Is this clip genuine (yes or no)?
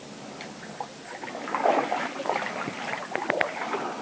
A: yes